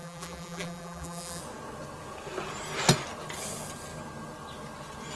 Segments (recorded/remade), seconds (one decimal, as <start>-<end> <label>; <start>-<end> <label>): 0.0-1.4 remade; 1.4-5.2 recorded